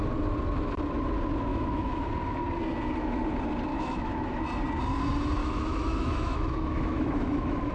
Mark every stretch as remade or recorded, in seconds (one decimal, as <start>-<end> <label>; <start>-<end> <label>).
0.0-1.5 recorded; 1.5-2.1 remade; 2.1-3.7 recorded; 3.7-4.4 remade; 4.4-5.4 recorded; 5.4-7.7 remade